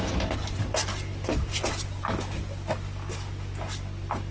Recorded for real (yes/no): yes